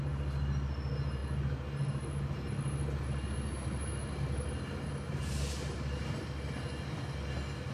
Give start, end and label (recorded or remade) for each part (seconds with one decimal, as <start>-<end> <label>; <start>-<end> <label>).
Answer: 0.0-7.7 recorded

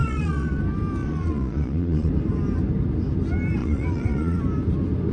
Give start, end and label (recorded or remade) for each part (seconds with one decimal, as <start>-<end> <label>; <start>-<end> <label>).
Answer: 0.0-0.6 remade; 0.6-1.0 recorded; 1.0-2.1 remade; 2.1-3.6 recorded; 3.6-4.4 remade; 4.4-5.1 recorded

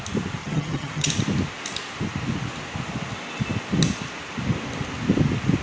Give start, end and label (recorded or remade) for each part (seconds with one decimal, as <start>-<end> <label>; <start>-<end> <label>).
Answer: 0.0-0.4 recorded; 0.4-1.1 remade; 1.1-5.6 recorded

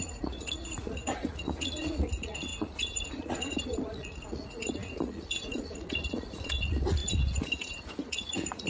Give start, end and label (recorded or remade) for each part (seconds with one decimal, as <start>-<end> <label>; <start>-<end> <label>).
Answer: 0.0-8.7 remade

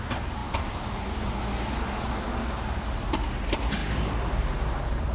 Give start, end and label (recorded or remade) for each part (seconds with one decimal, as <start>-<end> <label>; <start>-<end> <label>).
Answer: 0.0-0.4 recorded; 0.4-1.4 remade; 1.4-5.1 recorded

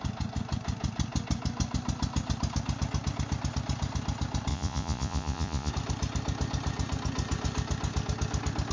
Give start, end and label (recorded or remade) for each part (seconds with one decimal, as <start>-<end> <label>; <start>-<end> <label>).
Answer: 0.0-4.5 recorded; 4.5-5.7 remade; 5.7-8.7 recorded

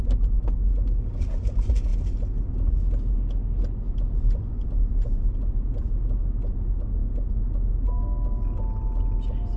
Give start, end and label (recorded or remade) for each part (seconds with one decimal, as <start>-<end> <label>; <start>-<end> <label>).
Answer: 0.0-9.6 recorded